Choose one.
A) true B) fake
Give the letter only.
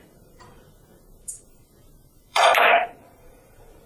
B